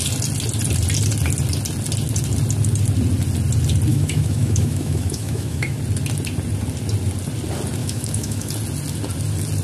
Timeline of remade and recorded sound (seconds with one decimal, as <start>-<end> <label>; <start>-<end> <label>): 0.0-3.9 recorded; 3.9-5.8 remade; 5.8-7.8 recorded; 7.8-8.5 remade; 8.5-9.6 recorded